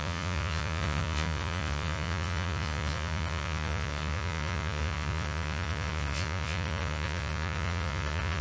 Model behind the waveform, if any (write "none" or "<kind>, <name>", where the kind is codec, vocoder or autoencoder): vocoder, Vocos